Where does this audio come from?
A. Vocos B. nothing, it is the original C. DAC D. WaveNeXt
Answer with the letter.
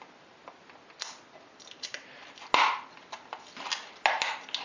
B